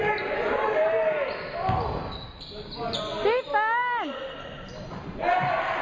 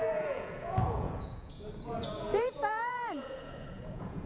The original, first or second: first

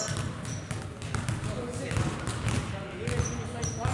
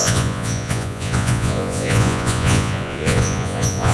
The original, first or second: first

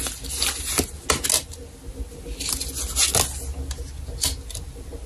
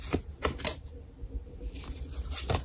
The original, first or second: first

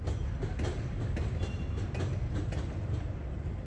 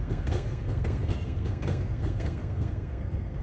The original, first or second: first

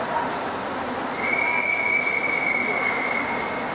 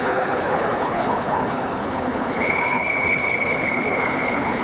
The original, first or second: first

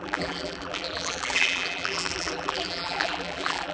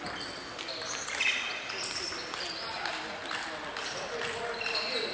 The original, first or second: second